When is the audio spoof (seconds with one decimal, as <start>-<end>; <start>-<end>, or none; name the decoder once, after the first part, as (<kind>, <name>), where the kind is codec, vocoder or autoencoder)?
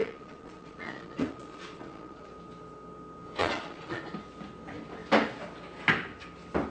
0.0-2.3 (vocoder, Vocos); 3.4-4.0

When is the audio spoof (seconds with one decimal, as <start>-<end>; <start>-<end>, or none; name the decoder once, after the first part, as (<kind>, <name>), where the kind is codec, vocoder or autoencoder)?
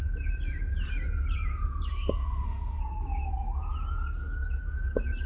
1.9-2.8 (autoencoder, DAC-VAE)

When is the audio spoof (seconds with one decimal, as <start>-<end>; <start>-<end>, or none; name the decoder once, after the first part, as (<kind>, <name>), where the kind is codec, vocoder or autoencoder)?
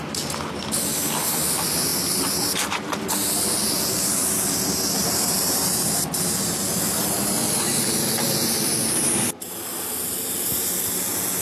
none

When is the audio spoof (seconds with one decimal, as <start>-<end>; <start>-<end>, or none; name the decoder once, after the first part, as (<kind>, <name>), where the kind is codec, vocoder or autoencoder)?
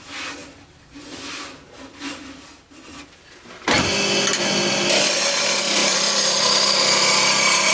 5.8-6.4 (vocoder, BigVGAN v2)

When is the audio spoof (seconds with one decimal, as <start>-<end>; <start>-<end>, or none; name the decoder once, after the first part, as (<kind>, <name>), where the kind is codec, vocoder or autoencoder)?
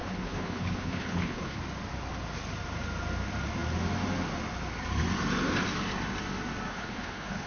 0.0-1.6 (codec, HILCodec); 6.7-7.5